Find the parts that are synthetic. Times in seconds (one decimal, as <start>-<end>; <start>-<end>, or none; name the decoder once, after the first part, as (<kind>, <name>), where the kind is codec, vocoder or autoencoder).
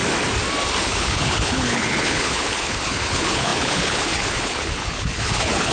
0.8-5.7 (codec, HILCodec)